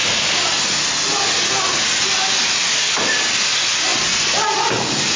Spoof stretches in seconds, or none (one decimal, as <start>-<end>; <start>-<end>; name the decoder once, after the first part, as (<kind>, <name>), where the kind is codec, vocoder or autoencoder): none